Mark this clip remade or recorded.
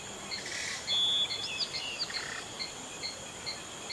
recorded